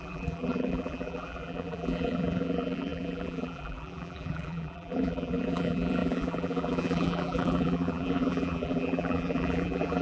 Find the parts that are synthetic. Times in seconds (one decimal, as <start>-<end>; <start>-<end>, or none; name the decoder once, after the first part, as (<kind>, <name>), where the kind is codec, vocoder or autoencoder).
0.0-10.0 (vocoder, BigVGAN v2)